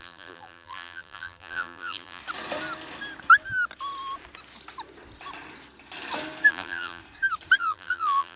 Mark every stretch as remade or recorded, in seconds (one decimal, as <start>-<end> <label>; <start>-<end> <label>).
0.0-2.2 remade; 2.2-6.5 recorded; 6.5-7.0 remade; 7.0-7.6 recorded; 7.6-8.4 remade